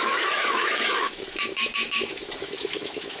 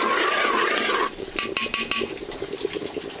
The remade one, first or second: first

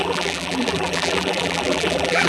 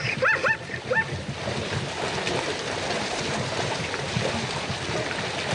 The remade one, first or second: first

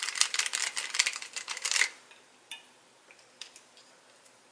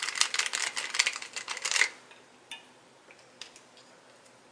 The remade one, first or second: first